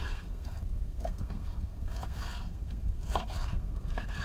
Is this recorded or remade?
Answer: remade